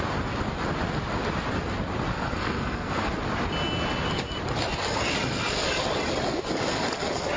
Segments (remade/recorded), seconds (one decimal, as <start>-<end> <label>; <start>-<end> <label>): 0.0-2.1 recorded; 2.1-3.1 remade; 3.1-7.4 recorded